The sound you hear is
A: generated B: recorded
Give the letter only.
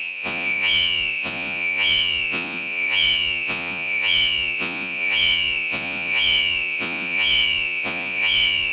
A